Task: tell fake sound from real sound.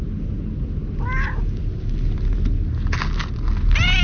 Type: real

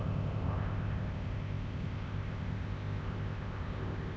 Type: fake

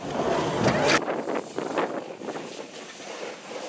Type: real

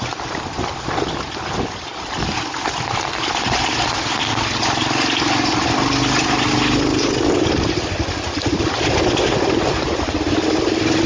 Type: real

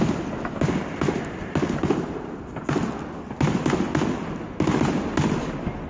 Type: real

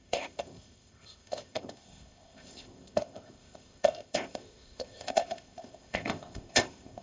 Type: fake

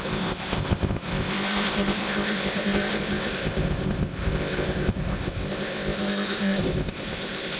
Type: fake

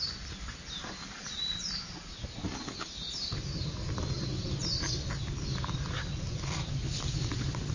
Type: real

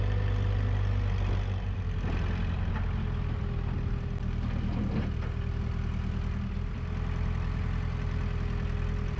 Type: real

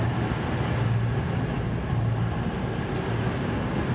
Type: real